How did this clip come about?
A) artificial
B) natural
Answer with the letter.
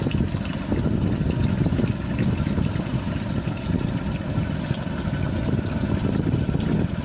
B